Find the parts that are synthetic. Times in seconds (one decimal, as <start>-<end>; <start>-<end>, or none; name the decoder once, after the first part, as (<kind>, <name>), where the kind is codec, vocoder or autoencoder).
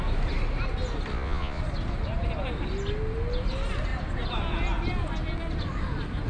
1.1-1.6 (vocoder, Vocos)